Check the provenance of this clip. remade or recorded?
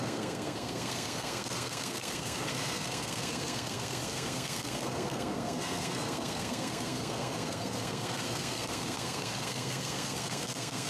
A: remade